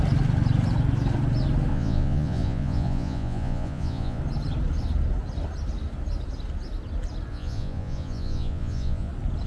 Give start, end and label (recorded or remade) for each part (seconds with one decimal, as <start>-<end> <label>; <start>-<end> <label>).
0.0-1.7 recorded; 1.7-4.2 remade; 4.2-7.3 recorded; 7.3-9.1 remade; 9.1-9.5 recorded

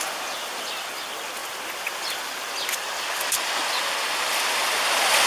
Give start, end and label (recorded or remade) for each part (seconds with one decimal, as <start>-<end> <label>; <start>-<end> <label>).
0.0-5.3 recorded

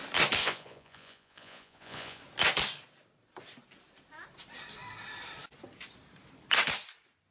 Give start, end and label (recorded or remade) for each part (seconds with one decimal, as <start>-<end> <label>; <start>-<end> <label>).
0.0-0.4 recorded; 0.4-2.2 remade; 2.2-7.3 recorded

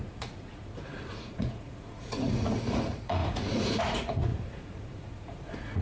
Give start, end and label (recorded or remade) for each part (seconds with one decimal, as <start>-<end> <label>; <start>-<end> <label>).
0.0-5.8 remade

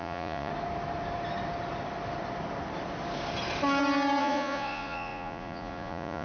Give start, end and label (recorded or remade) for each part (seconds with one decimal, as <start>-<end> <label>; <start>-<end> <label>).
0.0-0.5 remade; 0.5-4.2 recorded; 4.2-6.2 remade

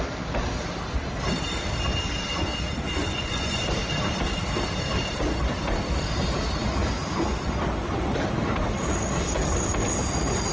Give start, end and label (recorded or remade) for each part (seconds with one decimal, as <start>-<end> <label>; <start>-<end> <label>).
0.0-3.0 recorded; 3.0-3.6 remade; 3.6-10.5 recorded

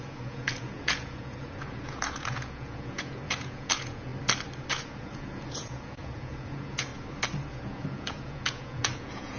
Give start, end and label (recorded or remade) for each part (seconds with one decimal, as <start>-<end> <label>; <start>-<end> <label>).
0.0-4.1 remade; 4.1-4.7 recorded; 4.7-6.9 remade; 6.9-7.5 recorded; 7.5-9.4 remade

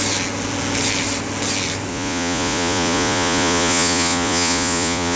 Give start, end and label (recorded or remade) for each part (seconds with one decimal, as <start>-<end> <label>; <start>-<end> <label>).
0.0-1.9 recorded; 1.9-5.2 remade